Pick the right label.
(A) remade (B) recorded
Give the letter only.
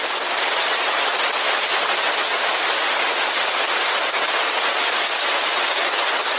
B